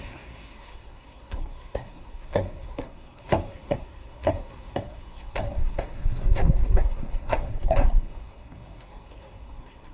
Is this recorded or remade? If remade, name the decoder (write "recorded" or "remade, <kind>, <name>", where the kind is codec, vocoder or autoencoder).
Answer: remade, codec, SNAC